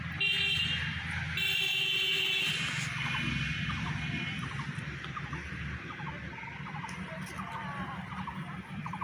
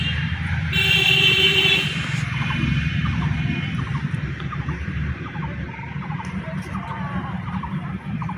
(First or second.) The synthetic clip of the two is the second